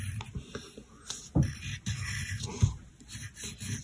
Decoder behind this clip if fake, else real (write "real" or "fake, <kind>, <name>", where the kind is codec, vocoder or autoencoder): real